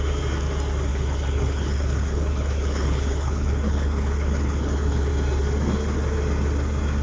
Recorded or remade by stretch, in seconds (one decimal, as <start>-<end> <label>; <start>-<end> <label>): 0.0-0.9 recorded; 0.9-5.1 remade; 5.1-7.0 recorded

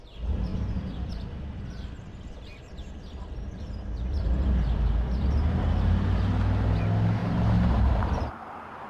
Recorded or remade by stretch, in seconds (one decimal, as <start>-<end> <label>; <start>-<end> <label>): 0.0-0.5 recorded; 0.5-1.1 remade; 1.1-7.2 recorded; 7.2-8.9 remade